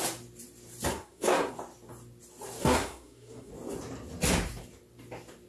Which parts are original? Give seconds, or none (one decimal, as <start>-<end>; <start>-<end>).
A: 0.0-0.9; 1.5-2.6; 3.5-5.5